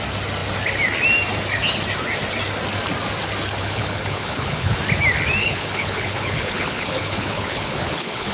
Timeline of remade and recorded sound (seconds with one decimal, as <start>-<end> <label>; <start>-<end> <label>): 0.0-3.6 recorded; 3.6-4.8 remade; 4.8-5.4 recorded; 5.4-8.3 remade